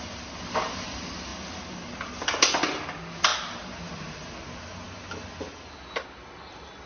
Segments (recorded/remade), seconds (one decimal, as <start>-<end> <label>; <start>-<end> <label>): 0.0-6.9 recorded